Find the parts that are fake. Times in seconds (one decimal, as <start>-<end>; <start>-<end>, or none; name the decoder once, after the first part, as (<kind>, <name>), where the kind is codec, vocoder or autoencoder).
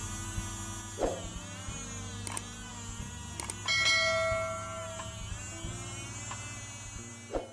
none